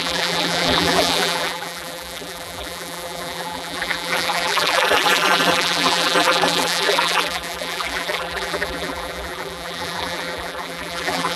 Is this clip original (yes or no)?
no